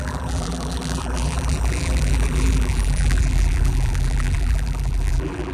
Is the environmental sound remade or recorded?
remade